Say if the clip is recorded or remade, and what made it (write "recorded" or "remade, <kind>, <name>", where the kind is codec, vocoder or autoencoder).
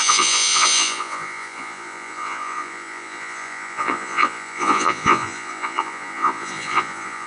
remade, vocoder, Vocos